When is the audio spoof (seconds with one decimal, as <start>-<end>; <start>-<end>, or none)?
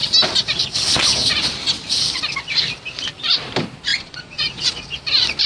3.9-4.9